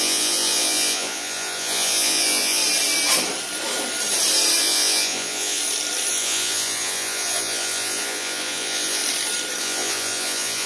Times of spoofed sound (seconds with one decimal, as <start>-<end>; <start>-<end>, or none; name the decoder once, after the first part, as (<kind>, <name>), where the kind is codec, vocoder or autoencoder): 0.0-2.6 (vocoder, Vocos); 4.6-5.6; 6.1-9.0; 9.6-10.7